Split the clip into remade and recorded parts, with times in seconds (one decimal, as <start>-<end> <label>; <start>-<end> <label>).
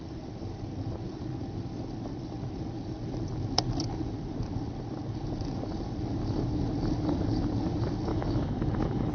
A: 0.0-8.1 recorded; 8.1-9.1 remade